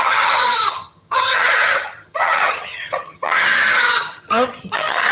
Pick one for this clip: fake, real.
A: fake